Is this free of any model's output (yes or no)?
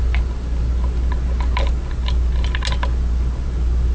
yes